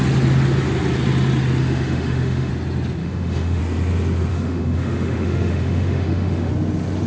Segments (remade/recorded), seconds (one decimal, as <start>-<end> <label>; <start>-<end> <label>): 0.0-1.6 recorded; 1.6-2.5 remade; 2.5-3.0 recorded; 3.0-3.6 remade; 3.6-4.3 recorded; 4.3-6.5 remade; 6.5-7.1 recorded